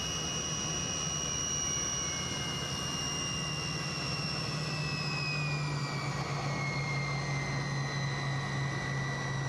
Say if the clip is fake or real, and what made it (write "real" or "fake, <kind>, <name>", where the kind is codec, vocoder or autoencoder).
real